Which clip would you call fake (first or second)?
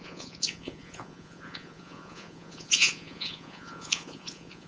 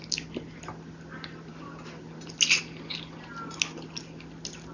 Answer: first